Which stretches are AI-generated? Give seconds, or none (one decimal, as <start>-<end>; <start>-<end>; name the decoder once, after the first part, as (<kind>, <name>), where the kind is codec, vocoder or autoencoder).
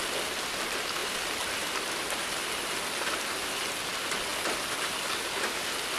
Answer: 4.3-6.0 (vocoder, BigVGAN v2)